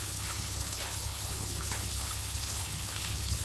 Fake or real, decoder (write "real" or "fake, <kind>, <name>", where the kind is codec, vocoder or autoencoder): fake, codec, HILCodec